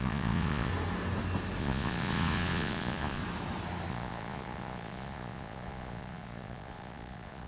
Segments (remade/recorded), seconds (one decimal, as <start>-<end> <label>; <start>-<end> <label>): 0.0-0.7 remade; 0.7-1.6 recorded; 1.6-3.2 remade; 3.2-3.9 recorded; 3.9-7.5 remade